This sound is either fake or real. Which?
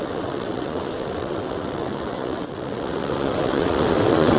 fake